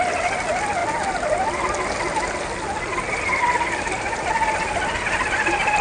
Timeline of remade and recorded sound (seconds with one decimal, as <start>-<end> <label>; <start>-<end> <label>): 0.0-5.8 recorded